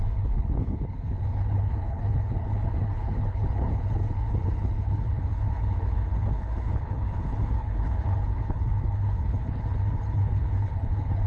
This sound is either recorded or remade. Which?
remade